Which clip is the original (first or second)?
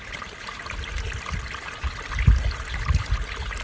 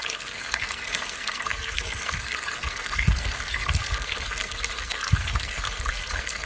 first